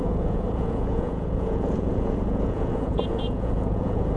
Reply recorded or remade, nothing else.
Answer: remade